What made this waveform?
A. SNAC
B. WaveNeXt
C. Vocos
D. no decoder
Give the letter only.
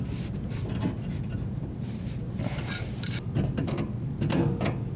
D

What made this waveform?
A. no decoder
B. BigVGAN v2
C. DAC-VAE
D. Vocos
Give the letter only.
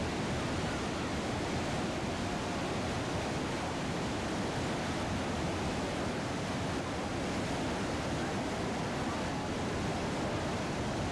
A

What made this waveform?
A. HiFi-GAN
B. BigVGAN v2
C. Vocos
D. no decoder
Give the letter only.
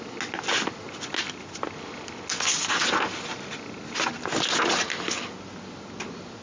D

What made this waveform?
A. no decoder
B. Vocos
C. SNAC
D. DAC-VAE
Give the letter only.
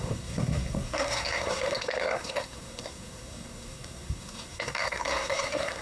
C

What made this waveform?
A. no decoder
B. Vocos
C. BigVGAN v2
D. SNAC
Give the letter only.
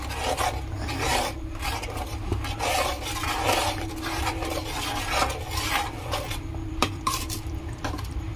C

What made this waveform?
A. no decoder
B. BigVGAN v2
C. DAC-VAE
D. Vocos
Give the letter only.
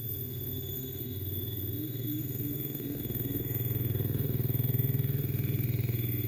C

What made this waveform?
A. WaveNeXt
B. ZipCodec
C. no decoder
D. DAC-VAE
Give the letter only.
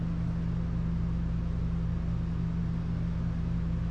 C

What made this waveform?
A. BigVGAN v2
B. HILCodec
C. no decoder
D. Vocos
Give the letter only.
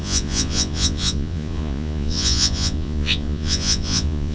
D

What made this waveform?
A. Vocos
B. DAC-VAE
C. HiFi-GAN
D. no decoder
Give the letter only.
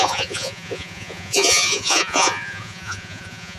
A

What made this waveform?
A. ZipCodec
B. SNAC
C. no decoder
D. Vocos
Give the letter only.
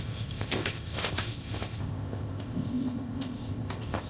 A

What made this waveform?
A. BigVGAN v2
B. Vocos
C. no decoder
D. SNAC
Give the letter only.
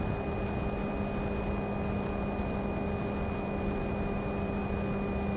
C